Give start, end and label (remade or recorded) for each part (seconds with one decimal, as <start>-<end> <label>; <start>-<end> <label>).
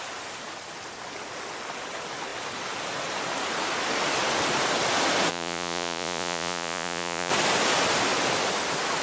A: 0.0-5.3 recorded; 5.3-7.3 remade; 7.3-9.0 recorded